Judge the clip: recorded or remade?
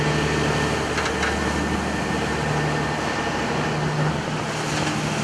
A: recorded